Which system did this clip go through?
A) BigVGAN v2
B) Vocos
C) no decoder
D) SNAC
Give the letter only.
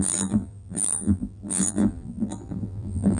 A